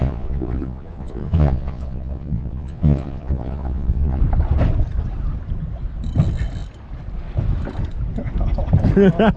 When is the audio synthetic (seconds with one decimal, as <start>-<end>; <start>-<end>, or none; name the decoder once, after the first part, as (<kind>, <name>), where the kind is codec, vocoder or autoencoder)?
0.0-4.2 (vocoder, Vocos)